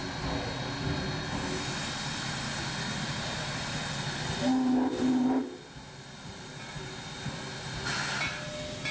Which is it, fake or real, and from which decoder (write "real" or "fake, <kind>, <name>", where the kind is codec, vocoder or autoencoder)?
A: real